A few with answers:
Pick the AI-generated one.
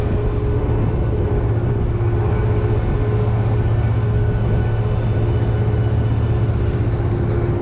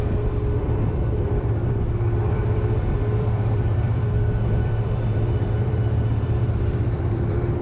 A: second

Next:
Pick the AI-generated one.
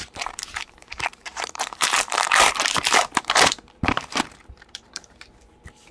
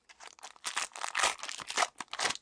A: first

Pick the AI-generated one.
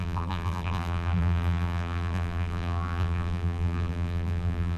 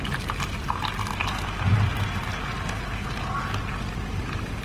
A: first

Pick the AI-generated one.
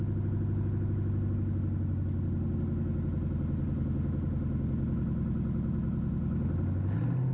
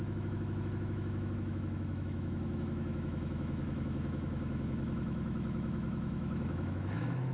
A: second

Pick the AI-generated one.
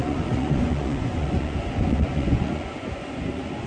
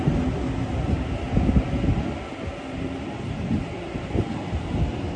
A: first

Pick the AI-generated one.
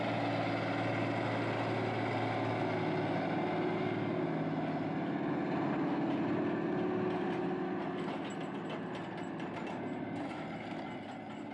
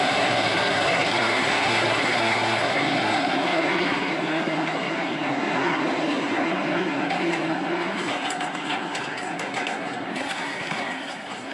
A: second